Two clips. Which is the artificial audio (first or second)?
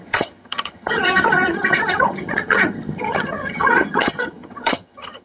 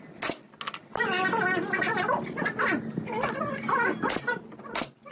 first